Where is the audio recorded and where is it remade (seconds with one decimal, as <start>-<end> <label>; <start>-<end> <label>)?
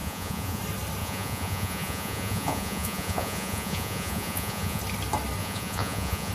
0.0-0.6 remade; 0.6-1.0 recorded; 1.0-4.8 remade; 4.8-5.4 recorded; 5.4-6.3 remade